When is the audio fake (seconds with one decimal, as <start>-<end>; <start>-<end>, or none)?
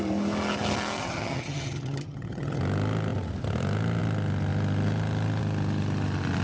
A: 1.0-2.6